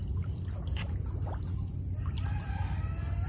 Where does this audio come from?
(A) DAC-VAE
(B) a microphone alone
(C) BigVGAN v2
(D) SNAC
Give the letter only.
B